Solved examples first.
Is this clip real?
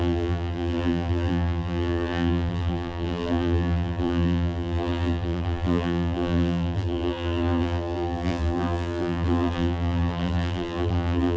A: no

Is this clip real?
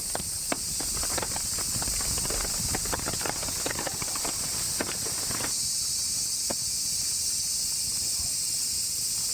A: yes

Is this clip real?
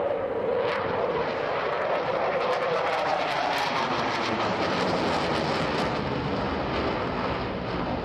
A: no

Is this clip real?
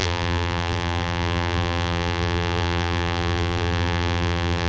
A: no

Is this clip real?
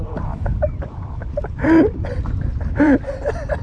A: no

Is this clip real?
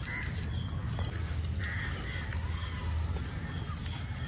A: yes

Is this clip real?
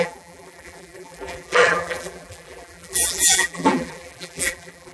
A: no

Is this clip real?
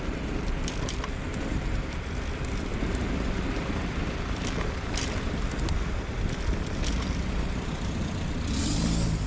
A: no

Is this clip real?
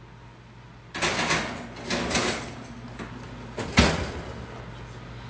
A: yes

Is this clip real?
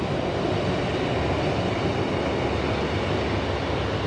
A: yes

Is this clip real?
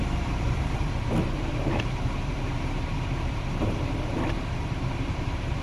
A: no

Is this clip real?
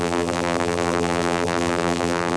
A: no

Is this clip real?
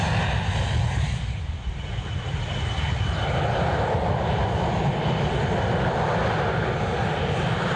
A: yes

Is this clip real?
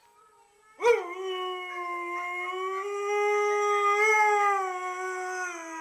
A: yes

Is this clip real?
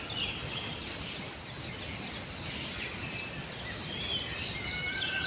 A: yes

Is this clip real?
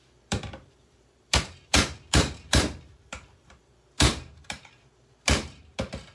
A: no